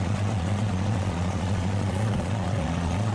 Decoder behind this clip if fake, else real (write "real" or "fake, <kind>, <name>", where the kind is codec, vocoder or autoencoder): fake, vocoder, Vocos